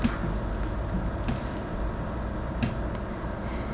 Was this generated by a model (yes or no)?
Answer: no